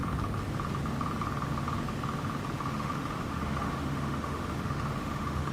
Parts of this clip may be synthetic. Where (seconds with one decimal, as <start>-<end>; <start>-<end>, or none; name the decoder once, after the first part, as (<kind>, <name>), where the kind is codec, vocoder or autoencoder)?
2.7-5.5 (autoencoder, DAC-VAE)